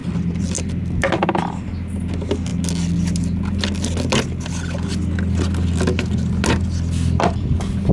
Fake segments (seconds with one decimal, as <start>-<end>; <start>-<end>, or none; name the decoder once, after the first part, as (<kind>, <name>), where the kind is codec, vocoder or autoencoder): none